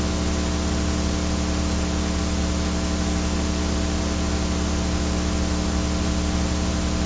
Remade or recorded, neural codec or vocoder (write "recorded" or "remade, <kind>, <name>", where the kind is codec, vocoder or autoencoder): recorded